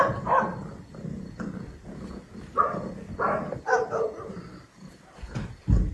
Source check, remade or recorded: recorded